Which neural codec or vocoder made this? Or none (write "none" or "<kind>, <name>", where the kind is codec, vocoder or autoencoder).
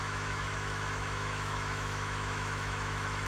autoencoder, DAC-VAE